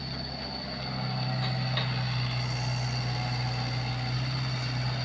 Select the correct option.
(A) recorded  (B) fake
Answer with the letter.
A